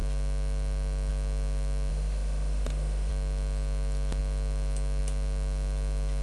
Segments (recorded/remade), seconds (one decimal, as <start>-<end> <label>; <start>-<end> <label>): 0.0-1.9 recorded; 1.9-3.1 remade; 3.1-6.2 recorded